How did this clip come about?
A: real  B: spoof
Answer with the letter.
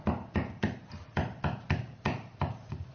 B